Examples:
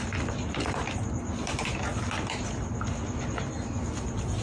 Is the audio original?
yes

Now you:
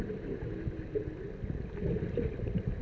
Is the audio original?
yes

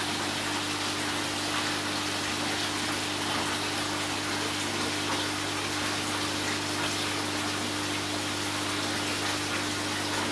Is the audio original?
yes